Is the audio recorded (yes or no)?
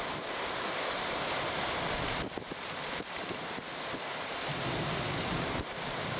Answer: yes